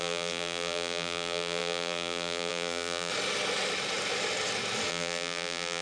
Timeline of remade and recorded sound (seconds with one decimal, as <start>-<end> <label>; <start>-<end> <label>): 0.0-3.1 remade; 3.1-4.9 recorded; 4.9-5.8 remade